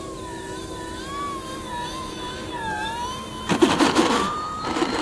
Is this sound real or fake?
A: fake